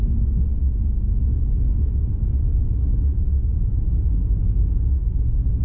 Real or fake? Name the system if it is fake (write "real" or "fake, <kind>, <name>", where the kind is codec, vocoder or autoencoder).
real